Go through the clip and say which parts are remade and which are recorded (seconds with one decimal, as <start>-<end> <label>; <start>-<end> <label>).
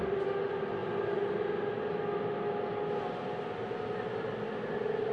0.0-5.1 recorded